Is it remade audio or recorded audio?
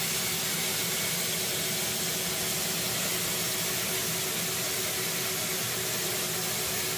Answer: recorded